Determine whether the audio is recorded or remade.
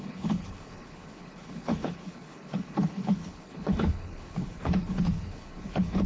remade